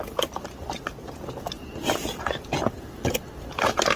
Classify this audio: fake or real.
real